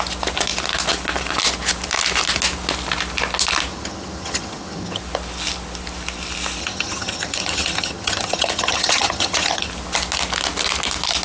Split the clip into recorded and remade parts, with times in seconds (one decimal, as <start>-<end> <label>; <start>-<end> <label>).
0.0-3.7 recorded; 3.7-5.0 remade; 5.0-6.6 recorded; 6.6-9.7 remade; 9.7-11.2 recorded